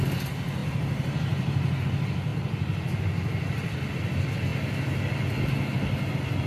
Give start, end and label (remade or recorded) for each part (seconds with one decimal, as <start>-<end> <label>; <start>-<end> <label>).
0.0-0.6 recorded; 0.6-1.8 remade; 1.8-6.5 recorded